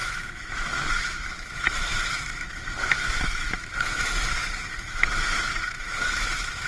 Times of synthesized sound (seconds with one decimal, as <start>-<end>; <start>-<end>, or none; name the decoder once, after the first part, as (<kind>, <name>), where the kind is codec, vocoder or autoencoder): 0.0-6.7 (autoencoder, DAC-VAE)

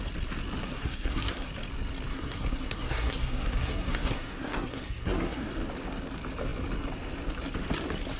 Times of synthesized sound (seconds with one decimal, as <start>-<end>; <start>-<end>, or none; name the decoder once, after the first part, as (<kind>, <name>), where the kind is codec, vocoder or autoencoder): 0.6-1.5 (codec, SNAC); 2.1-5.5

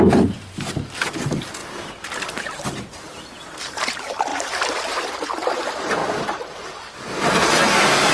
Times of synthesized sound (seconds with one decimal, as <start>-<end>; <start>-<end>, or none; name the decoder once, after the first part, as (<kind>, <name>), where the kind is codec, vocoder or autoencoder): 1.6-3.9 (vocoder, BigVGAN v2); 4.3-5.0; 6.0-6.8

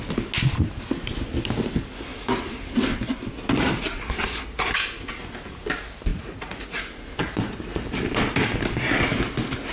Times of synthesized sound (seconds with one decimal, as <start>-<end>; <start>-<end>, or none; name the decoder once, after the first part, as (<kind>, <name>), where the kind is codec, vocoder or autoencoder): 6.1-6.8 (vocoder, Vocos)

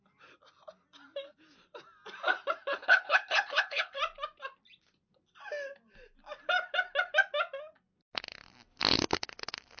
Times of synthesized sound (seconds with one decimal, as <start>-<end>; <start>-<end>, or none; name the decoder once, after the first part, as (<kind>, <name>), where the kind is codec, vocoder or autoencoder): 2.7-4.0 (codec, HILCodec)